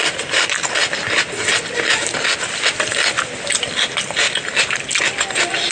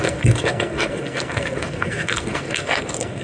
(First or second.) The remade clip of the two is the second